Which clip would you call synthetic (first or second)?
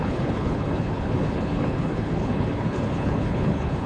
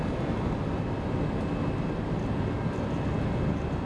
first